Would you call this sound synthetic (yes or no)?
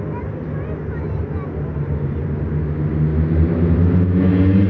no